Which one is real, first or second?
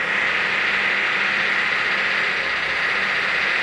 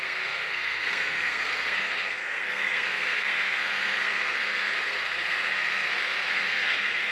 first